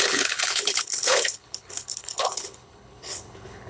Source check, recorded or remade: remade